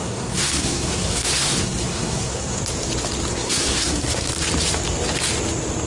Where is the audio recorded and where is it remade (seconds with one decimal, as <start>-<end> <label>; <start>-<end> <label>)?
0.0-2.6 remade; 2.6-3.3 recorded; 3.3-4.3 remade; 4.3-5.9 recorded